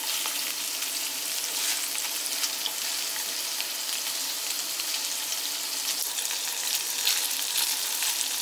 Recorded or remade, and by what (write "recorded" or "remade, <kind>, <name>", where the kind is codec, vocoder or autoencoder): remade, vocoder, BigVGAN v2